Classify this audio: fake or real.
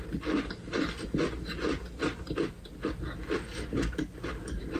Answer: real